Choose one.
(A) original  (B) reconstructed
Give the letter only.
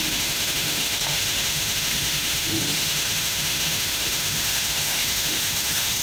B